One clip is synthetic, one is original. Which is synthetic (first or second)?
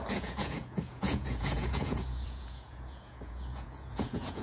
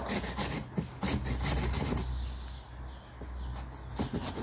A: first